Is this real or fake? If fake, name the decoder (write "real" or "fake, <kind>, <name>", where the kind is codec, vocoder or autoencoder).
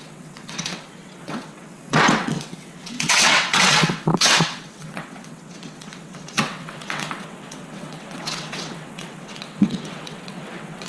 fake, vocoder, WaveNeXt